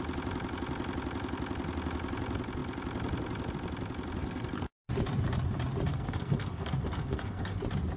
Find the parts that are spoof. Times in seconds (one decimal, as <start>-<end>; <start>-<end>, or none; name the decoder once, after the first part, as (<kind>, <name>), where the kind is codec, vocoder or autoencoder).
4.2-4.9 (codec, SNAC); 5.9-7.6